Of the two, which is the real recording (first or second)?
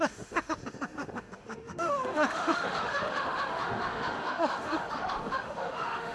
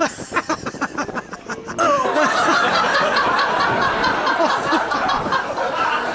second